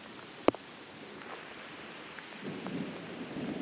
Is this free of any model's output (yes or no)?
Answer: yes